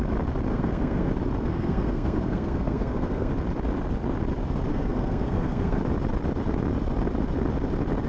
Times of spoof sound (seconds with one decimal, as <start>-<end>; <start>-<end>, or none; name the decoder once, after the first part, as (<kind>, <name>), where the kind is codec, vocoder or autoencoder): 0.5-1.1 (codec, SNAC); 1.5-3.3; 4.7-5.8